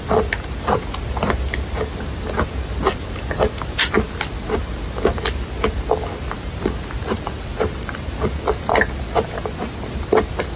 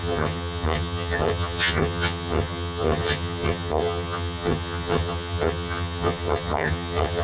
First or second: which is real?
first